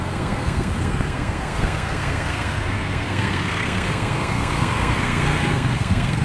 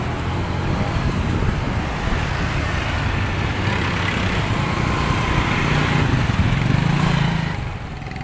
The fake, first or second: first